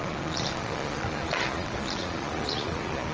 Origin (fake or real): fake